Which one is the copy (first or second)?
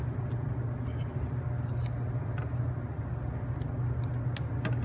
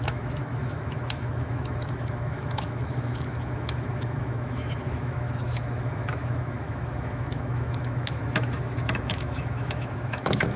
second